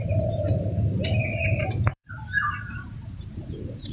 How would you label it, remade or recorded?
remade